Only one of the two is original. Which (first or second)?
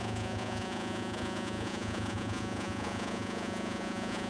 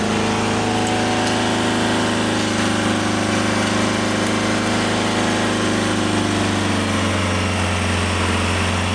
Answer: second